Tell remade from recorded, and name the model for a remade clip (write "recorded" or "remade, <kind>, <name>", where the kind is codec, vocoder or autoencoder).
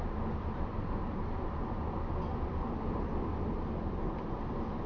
recorded